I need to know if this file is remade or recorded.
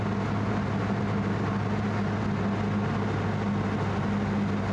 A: recorded